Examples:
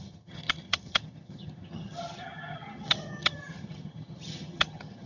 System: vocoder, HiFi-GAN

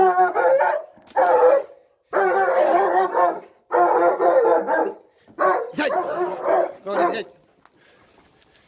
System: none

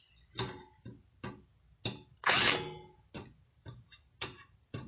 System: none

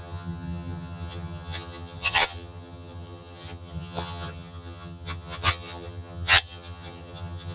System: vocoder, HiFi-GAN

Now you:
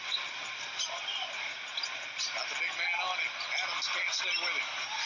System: none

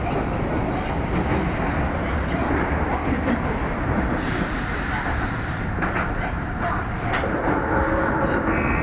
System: none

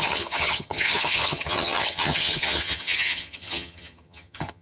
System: vocoder, HiFi-GAN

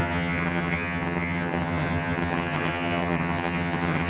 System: vocoder, HiFi-GAN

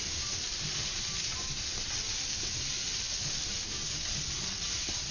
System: none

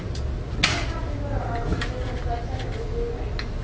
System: none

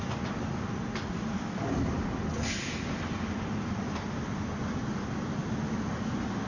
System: none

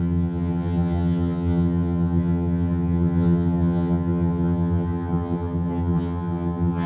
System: vocoder, HiFi-GAN